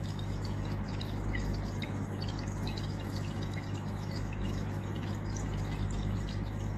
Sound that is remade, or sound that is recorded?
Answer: remade